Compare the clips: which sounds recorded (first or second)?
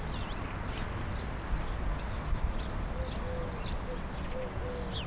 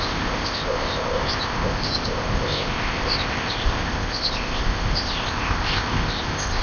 first